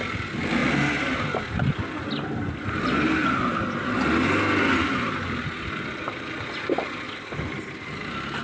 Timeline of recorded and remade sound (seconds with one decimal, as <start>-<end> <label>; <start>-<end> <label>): 0.0-8.4 recorded